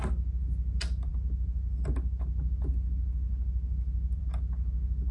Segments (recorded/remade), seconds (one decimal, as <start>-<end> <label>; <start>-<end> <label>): 0.0-5.1 recorded